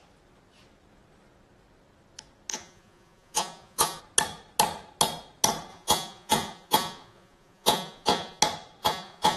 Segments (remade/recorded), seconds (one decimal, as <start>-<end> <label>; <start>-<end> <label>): 0.0-2.5 recorded; 2.5-4.0 remade; 4.0-5.7 recorded; 5.7-8.4 remade; 8.4-8.8 recorded; 8.8-9.4 remade